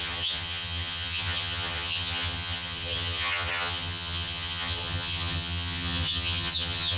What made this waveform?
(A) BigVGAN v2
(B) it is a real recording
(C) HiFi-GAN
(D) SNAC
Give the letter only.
C